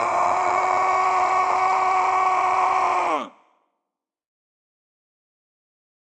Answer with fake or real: fake